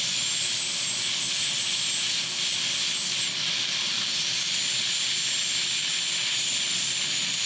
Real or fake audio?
real